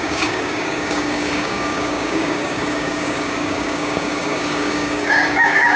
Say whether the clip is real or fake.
fake